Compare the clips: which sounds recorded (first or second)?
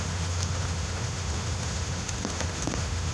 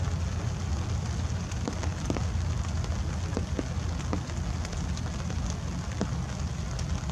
second